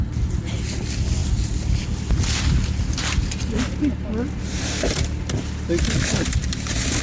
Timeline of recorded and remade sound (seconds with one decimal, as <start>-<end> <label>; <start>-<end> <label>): 0.0-7.0 recorded

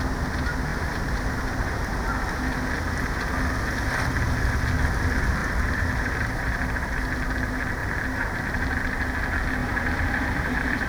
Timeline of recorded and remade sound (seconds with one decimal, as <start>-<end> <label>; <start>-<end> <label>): 0.0-0.7 recorded; 0.7-1.4 remade; 1.4-5.4 recorded; 5.4-7.0 remade; 7.0-7.8 recorded; 7.8-8.7 remade; 8.7-9.6 recorded; 9.6-10.9 remade

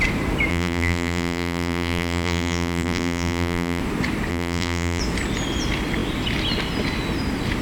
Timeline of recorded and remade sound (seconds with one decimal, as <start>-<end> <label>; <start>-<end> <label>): 0.0-0.5 recorded; 0.5-3.8 remade; 3.8-4.3 recorded; 4.3-5.0 remade; 5.0-7.6 recorded

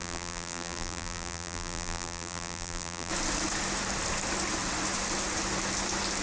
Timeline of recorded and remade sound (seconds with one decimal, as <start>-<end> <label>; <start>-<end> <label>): 0.0-3.1 remade; 3.1-6.2 recorded

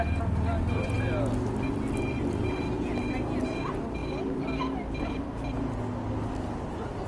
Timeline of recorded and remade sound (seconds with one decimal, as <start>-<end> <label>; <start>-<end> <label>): 0.0-4.0 recorded; 4.0-4.6 remade; 4.6-7.1 recorded